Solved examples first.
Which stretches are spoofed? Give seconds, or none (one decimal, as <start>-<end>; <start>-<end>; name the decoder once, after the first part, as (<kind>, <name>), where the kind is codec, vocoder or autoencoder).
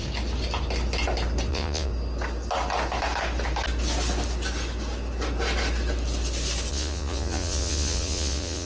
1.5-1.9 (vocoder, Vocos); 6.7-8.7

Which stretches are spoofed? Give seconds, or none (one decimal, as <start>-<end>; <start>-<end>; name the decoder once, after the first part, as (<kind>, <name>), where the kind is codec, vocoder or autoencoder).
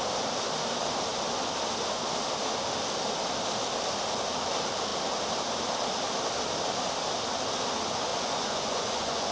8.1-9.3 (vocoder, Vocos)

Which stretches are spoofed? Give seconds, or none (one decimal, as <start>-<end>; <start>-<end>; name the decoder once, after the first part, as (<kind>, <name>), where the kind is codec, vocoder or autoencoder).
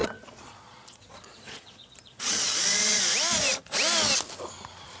0.0-3.0 (vocoder, Vocos)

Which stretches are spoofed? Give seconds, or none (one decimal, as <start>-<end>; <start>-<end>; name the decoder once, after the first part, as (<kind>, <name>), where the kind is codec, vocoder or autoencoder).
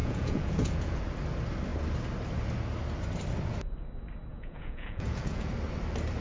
0.0-1.0 (vocoder, Vocos); 4.3-5.5